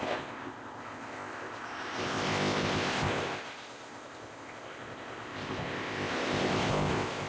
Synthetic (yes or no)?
yes